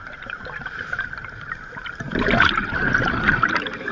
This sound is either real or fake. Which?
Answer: fake